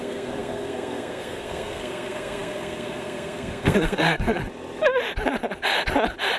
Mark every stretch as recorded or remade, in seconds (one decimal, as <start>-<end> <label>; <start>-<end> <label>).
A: 0.0-4.4 remade; 4.4-6.4 recorded